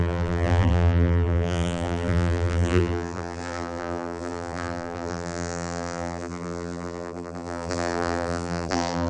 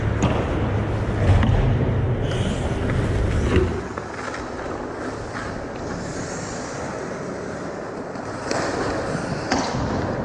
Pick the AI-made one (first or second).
first